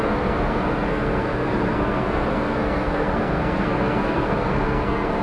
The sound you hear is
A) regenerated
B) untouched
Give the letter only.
A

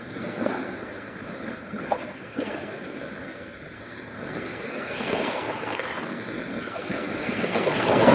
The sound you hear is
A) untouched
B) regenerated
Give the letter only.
B